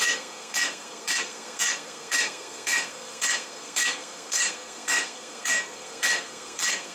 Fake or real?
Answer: fake